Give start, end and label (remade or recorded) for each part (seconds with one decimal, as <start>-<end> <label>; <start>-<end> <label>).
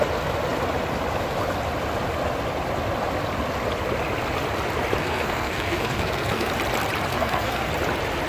0.0-5.0 recorded; 5.0-6.5 remade; 6.5-7.1 recorded; 7.1-7.7 remade; 7.7-8.3 recorded